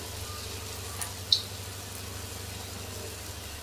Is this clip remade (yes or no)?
no